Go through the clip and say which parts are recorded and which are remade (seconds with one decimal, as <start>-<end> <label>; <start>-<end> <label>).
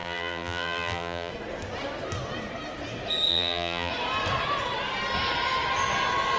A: 0.0-1.3 remade; 1.3-3.3 recorded; 3.3-3.9 remade; 3.9-6.4 recorded